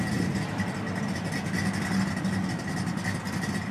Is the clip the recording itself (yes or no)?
yes